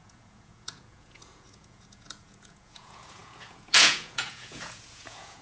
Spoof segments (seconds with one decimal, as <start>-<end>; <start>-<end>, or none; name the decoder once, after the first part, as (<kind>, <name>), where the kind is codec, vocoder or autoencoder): 0.0-5.4 (vocoder, Vocos)